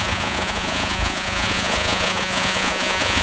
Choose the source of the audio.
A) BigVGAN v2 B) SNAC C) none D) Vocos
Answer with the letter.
D